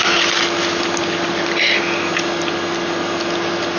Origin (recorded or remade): recorded